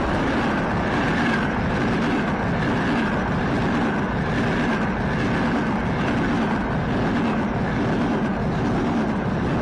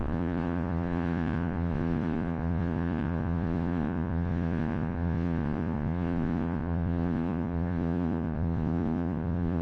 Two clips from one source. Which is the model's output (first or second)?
second